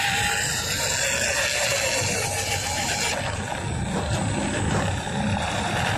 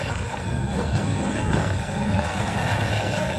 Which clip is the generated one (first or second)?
second